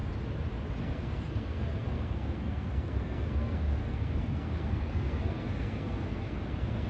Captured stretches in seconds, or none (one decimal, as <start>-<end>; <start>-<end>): 0.0-0.8